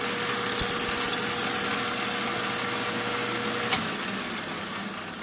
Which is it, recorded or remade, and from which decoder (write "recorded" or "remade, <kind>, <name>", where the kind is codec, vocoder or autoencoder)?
recorded